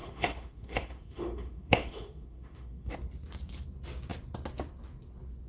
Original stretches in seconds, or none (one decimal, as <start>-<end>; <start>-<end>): 2.9-5.5